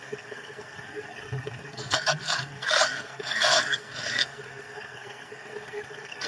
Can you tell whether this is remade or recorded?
remade